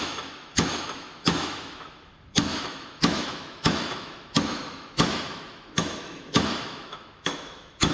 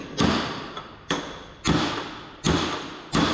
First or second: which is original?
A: second